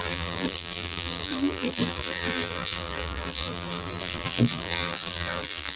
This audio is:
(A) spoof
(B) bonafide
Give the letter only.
A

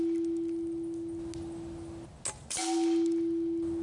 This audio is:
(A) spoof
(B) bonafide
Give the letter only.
B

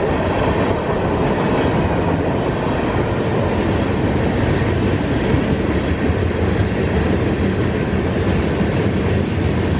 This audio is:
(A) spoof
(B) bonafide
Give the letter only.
B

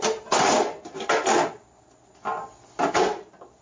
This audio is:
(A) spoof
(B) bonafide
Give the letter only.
B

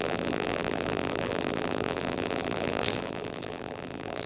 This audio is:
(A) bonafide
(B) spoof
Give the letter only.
B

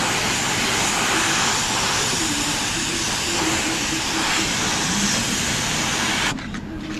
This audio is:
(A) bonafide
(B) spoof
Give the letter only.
B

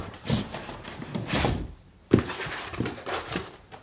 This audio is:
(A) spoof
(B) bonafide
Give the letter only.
A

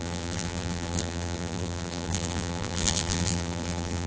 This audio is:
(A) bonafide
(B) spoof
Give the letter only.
B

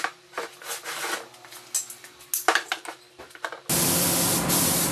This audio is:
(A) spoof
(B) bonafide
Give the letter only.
B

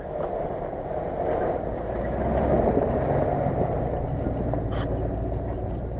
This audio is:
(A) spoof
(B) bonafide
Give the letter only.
B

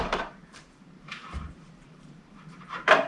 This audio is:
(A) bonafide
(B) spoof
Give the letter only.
B